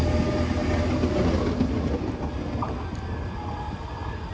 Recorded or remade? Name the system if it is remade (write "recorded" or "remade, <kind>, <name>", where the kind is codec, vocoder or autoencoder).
recorded